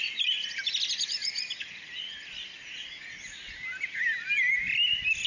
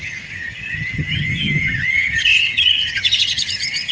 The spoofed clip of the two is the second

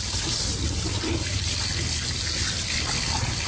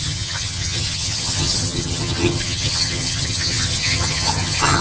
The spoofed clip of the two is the second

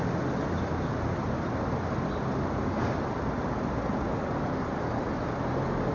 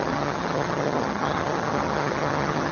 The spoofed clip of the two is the second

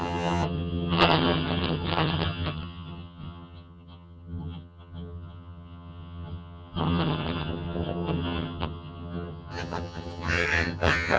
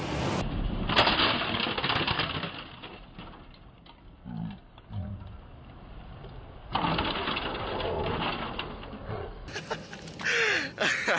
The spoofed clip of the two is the first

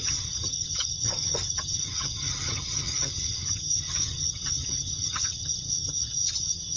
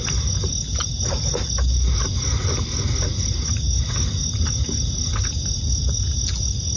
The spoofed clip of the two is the first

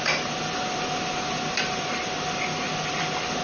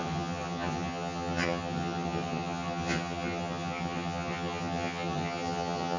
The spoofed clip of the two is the second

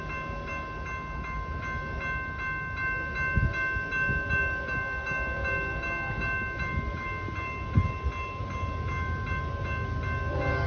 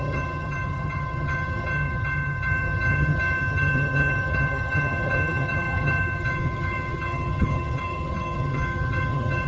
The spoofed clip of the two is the second